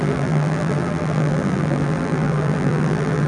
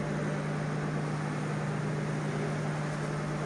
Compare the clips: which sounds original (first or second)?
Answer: second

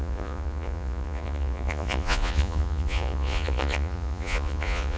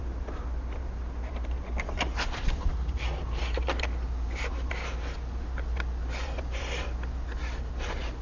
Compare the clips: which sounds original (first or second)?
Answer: second